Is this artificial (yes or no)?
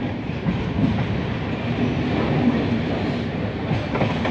no